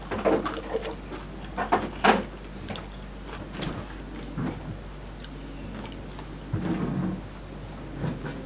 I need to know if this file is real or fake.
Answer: real